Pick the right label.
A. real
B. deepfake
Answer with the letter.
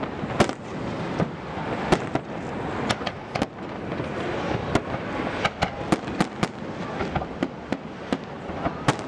A